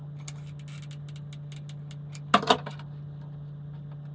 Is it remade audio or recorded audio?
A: recorded